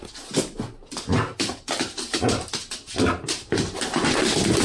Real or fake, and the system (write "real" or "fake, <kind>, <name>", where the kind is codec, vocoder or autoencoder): real